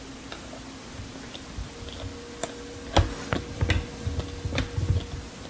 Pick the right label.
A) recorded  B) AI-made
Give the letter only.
A